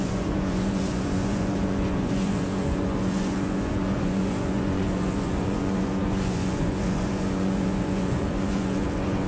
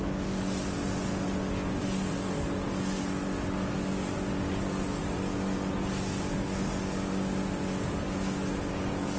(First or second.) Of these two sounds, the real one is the second